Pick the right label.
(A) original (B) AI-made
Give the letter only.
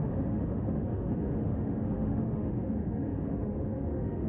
B